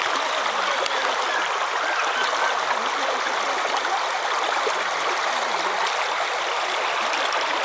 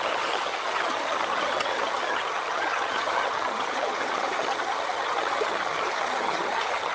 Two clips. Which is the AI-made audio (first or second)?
second